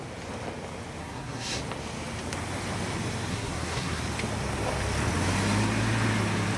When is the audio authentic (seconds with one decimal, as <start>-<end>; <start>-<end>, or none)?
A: 0.0-1.0; 1.6-3.3; 4.0-6.6